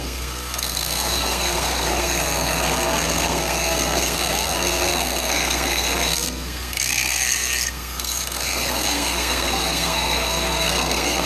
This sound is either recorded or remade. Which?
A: remade